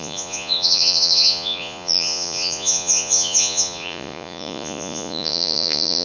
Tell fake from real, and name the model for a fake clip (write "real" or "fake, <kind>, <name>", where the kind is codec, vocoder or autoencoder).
fake, vocoder, Vocos